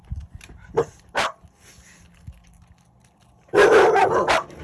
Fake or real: real